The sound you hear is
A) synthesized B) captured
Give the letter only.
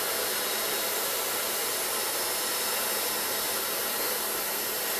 B